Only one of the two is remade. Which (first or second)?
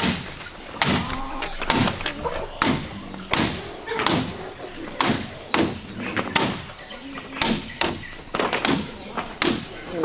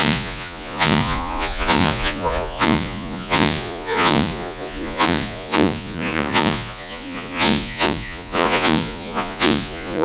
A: second